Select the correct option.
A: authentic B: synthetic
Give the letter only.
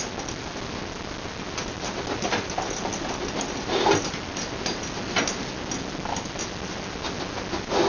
A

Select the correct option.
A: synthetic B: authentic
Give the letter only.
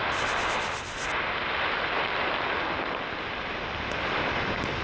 B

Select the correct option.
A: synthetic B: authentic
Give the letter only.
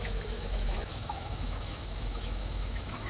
A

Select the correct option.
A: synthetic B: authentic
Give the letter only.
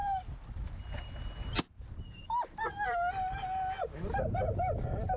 B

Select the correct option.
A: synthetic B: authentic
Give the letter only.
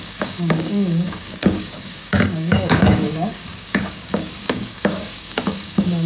A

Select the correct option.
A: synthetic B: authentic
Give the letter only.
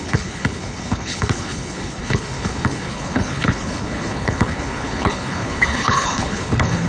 A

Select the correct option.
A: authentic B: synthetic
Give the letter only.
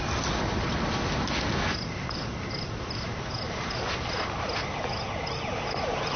A